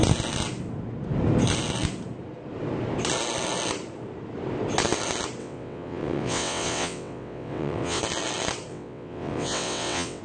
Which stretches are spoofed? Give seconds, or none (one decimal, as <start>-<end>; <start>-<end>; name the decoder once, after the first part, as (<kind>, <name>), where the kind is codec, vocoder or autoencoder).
5.4-8.0 (vocoder, WaveNeXt); 8.7-10.2